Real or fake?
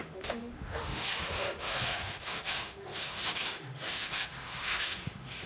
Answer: fake